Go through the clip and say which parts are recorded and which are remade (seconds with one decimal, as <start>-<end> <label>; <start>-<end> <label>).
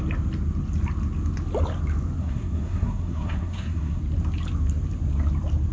0.0-2.2 recorded; 2.2-4.0 remade; 4.0-5.7 recorded